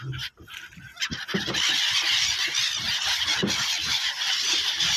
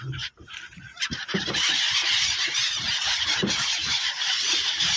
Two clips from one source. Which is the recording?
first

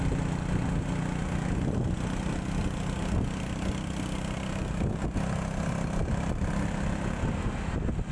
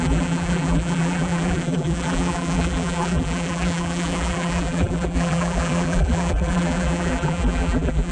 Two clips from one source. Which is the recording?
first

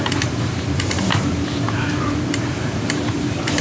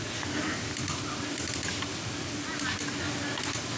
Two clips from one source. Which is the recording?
second